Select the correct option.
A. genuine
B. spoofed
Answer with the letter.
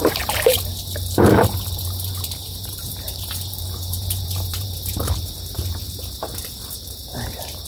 B